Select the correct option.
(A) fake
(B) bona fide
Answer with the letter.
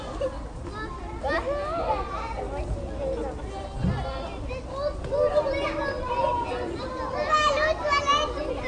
B